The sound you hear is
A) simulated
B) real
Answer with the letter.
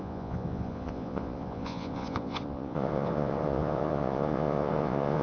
A